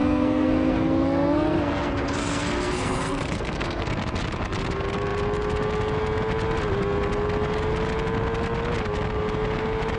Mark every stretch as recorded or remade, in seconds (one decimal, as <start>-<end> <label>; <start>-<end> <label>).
0.0-3.9 remade; 3.9-10.0 recorded